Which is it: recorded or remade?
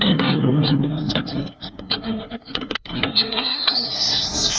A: remade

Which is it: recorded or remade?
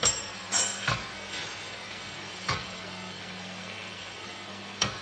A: remade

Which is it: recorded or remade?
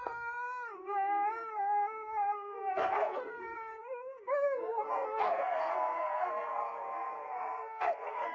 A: remade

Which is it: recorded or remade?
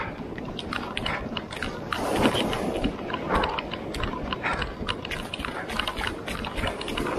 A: recorded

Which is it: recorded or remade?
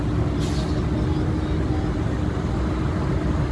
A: recorded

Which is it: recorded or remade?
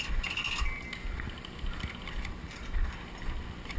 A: recorded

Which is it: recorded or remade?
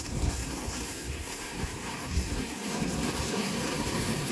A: remade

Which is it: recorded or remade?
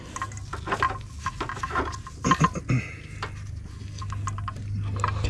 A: recorded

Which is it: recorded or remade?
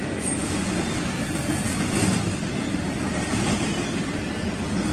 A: recorded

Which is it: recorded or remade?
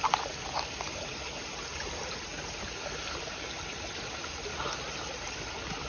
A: recorded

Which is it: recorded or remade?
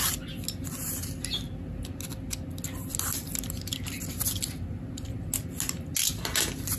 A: recorded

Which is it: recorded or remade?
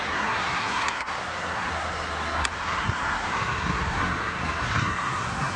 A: remade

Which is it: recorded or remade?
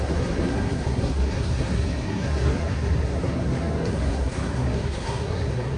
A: remade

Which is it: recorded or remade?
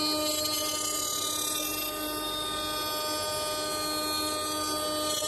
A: recorded